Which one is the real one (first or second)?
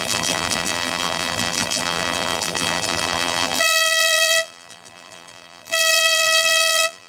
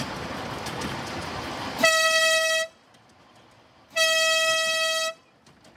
second